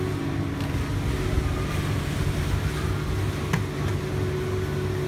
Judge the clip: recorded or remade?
recorded